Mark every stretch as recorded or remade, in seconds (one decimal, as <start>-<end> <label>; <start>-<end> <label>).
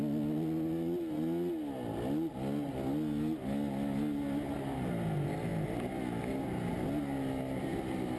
0.0-8.2 recorded